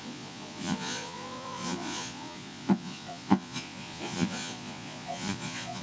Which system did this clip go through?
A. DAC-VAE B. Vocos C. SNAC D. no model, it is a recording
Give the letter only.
B